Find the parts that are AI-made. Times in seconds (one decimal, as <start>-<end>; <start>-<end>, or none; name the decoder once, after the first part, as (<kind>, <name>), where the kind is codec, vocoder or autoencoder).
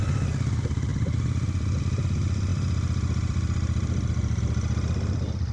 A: 2.5-4.4 (vocoder, BigVGAN v2)